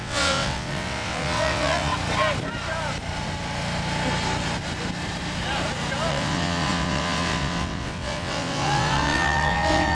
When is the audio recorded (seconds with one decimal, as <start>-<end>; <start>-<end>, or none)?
1.9-6.1